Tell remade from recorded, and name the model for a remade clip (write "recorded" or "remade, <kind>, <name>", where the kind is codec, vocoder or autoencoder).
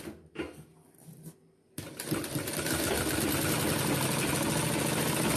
recorded